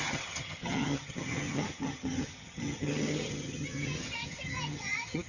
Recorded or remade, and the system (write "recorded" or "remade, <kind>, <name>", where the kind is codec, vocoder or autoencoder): remade, vocoder, HiFi-GAN